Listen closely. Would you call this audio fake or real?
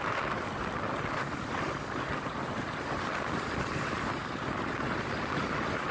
fake